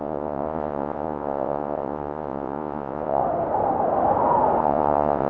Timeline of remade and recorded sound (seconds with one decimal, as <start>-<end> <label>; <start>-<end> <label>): 0.0-3.2 remade; 3.2-4.6 recorded; 4.6-5.3 remade